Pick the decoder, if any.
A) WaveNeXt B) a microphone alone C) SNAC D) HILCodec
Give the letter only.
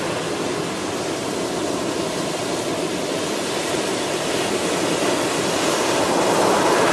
B